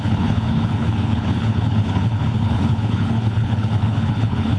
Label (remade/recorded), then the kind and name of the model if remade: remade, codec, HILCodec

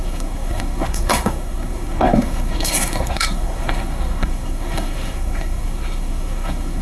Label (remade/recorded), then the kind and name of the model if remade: remade, codec, SNAC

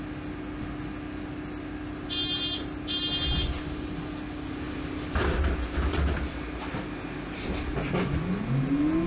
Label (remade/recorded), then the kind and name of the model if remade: recorded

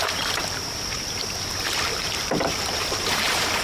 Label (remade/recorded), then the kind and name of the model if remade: remade, vocoder, BigVGAN v2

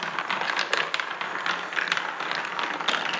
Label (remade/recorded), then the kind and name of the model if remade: recorded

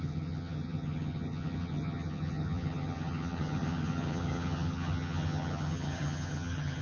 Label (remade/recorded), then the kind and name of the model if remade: remade, vocoder, HiFi-GAN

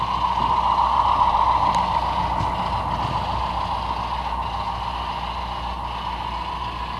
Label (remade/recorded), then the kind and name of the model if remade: recorded